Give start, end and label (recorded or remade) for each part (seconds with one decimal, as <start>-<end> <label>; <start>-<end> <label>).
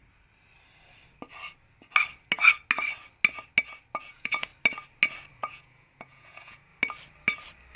0.0-4.1 recorded; 4.1-4.5 remade; 4.5-5.4 recorded; 5.4-6.7 remade; 6.7-7.8 recorded